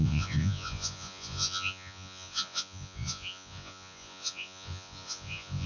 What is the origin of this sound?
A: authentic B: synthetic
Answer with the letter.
B